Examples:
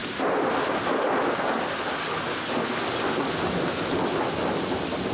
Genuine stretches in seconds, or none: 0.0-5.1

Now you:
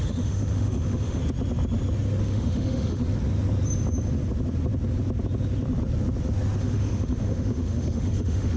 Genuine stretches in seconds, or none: 1.2-2.2; 3.0-6.6

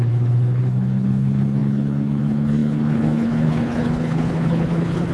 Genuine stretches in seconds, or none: none

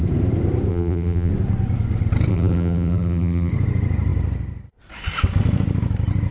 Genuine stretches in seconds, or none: 0.0-0.7; 1.3-2.3; 3.5-6.3